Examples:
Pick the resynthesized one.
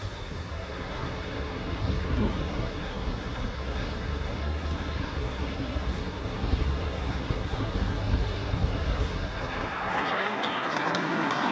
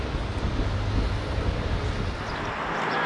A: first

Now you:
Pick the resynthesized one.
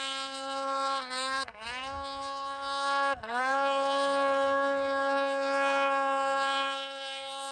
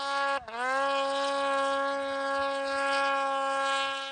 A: first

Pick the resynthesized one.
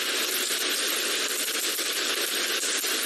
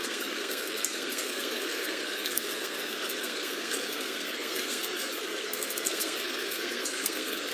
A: second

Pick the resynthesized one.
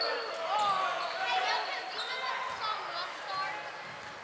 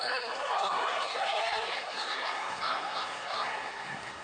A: second